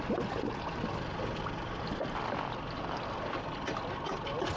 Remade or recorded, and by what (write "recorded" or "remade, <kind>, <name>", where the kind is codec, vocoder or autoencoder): recorded